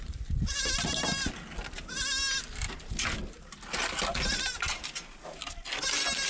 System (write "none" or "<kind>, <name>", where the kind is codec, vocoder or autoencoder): none